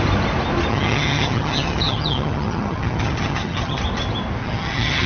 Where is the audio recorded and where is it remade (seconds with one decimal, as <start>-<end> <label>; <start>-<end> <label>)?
0.0-0.7 recorded; 0.7-3.8 remade; 3.8-4.4 recorded; 4.4-5.1 remade